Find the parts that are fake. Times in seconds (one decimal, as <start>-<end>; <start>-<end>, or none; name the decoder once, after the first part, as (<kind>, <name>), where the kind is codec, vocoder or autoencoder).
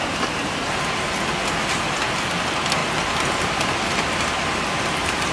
none